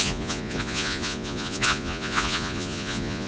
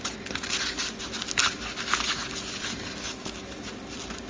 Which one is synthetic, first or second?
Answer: first